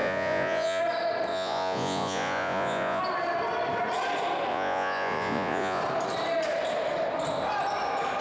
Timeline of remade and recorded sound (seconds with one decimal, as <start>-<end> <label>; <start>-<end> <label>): 0.0-0.8 remade; 0.8-1.3 recorded; 1.3-3.0 remade; 3.0-4.5 recorded; 4.5-5.8 remade; 5.8-8.2 recorded